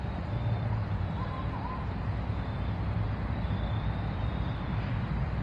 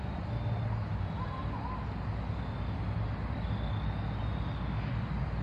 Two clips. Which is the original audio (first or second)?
second